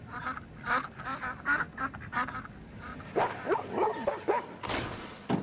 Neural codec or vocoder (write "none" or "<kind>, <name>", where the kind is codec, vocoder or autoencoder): none